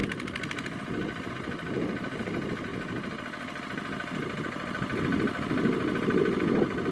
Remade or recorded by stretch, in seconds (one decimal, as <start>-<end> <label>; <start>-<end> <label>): 0.0-6.9 recorded